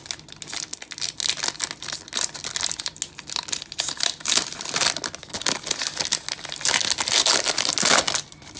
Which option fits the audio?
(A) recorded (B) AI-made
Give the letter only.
A